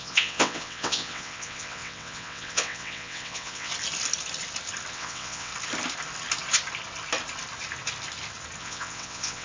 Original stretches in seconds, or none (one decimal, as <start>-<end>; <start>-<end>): 3.7-4.9; 5.5-8.6